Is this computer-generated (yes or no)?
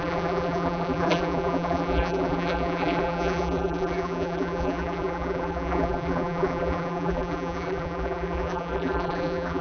yes